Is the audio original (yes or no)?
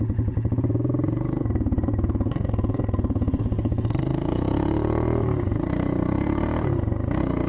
no